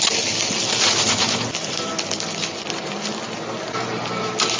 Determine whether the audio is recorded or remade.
recorded